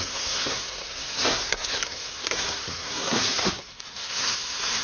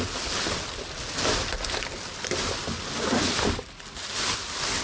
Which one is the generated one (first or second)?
first